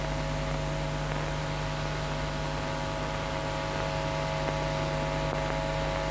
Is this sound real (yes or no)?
yes